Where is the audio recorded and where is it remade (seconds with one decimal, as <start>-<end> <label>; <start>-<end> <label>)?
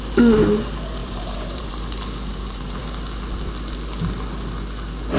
0.0-1.0 recorded; 1.0-1.7 remade; 1.7-2.3 recorded; 2.3-2.8 remade; 2.8-5.2 recorded